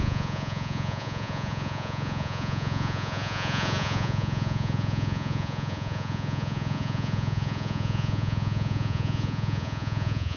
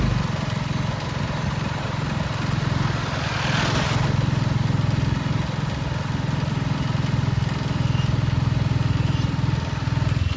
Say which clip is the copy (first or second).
first